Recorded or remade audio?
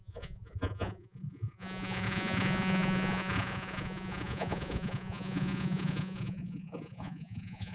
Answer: remade